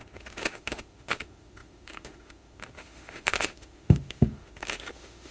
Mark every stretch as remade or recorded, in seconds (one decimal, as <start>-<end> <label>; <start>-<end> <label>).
0.0-5.3 remade